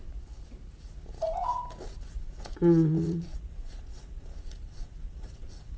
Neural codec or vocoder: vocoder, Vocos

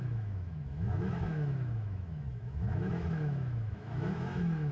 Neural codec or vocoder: autoencoder, DAC-VAE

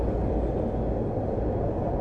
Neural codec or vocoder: none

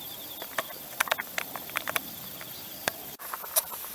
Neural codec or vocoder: vocoder, BigVGAN v2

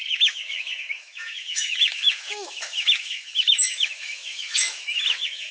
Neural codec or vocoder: autoencoder, DAC-VAE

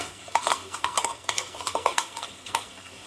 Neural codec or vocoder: codec, SNAC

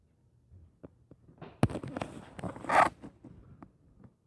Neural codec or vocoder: none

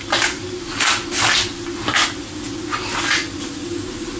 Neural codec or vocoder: none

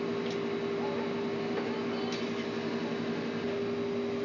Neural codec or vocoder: none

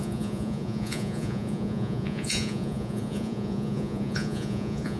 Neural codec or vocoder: vocoder, Vocos